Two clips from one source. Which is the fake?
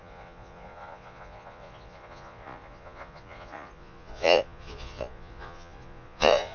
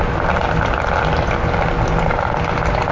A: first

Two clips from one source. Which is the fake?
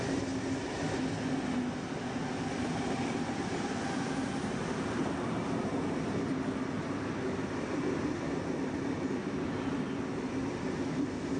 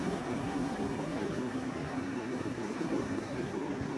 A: second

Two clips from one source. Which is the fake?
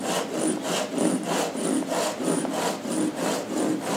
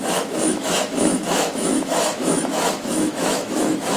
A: second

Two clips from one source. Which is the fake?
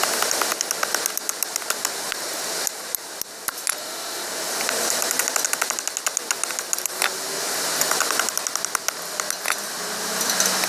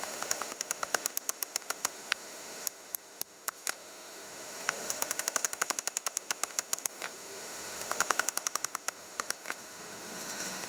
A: second